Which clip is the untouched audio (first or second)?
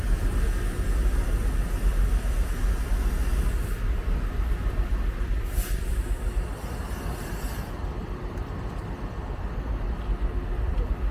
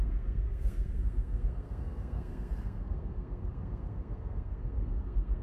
first